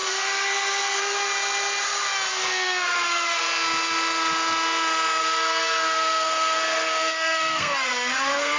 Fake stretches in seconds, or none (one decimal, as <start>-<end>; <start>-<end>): 0.0-1.0; 2.3-3.4; 5.2-8.6